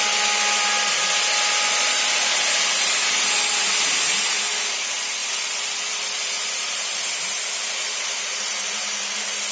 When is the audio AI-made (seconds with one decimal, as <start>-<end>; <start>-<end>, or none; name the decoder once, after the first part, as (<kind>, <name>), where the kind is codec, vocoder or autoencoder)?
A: 5.2-9.5 (vocoder, BigVGAN v2)